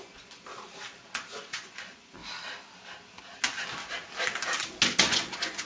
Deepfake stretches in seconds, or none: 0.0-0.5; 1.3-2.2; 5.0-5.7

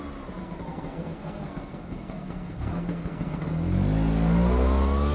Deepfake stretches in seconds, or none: 0.4-3.5